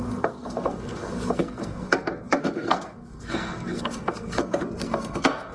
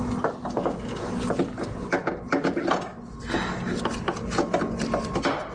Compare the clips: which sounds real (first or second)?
second